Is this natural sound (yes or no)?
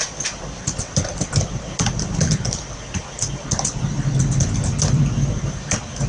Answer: no